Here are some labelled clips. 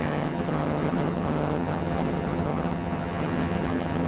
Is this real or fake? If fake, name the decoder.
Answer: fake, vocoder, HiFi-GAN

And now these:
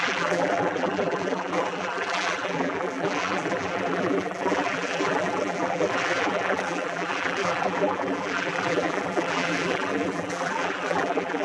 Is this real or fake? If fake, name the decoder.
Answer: fake, vocoder, BigVGAN v2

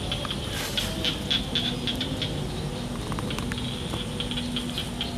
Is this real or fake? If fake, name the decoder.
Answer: real